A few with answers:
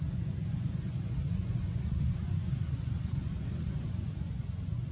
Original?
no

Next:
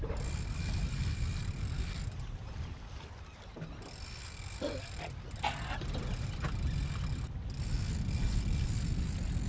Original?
yes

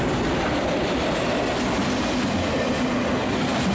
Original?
yes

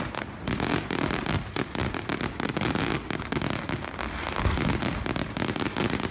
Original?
yes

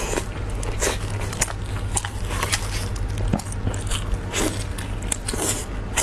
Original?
yes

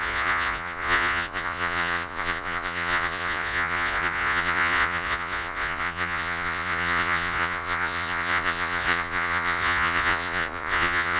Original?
no